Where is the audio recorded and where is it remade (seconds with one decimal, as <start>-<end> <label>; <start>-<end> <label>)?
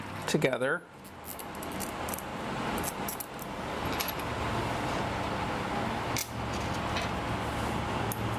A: 0.0-8.4 recorded